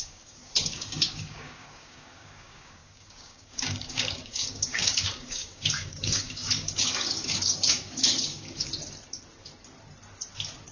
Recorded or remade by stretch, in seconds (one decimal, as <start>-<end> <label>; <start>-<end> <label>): 0.0-8.7 remade; 8.7-10.7 recorded